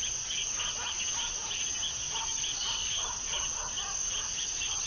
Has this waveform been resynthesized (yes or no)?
no